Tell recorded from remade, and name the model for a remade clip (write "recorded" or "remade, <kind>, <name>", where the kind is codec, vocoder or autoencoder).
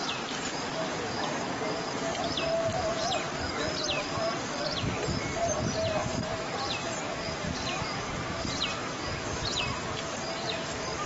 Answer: remade, vocoder, BigVGAN v2